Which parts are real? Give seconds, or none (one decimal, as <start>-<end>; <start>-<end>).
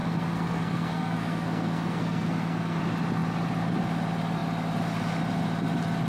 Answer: 2.8-6.1